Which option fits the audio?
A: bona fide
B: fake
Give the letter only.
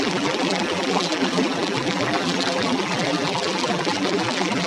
B